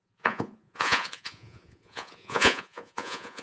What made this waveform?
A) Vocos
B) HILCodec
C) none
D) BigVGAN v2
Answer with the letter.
A